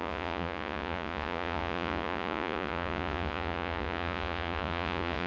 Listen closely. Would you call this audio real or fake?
fake